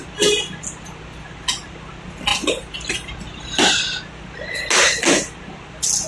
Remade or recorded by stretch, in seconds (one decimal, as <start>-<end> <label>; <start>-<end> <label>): 0.0-6.1 recorded